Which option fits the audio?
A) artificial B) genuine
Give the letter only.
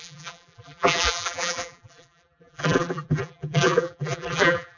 A